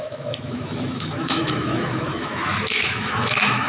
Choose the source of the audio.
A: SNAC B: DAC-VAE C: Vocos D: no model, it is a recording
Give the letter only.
B